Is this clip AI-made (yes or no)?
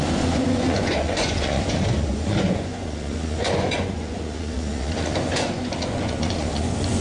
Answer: yes